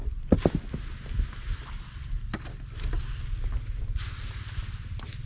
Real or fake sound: real